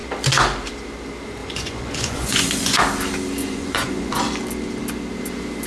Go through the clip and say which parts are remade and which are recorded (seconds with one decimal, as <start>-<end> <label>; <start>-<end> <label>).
0.0-1.4 recorded; 1.4-2.8 remade; 2.8-3.4 recorded; 3.4-4.2 remade; 4.2-5.7 recorded